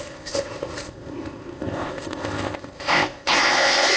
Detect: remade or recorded remade